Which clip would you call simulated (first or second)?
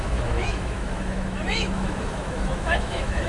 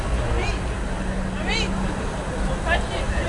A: first